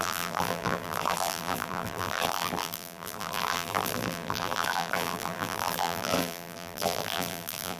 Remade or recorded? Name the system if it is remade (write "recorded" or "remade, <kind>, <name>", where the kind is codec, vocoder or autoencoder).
remade, vocoder, BigVGAN v2